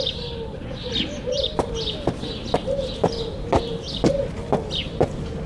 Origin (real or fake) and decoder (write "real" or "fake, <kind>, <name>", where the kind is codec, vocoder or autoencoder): real